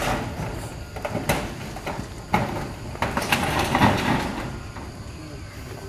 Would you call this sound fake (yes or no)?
no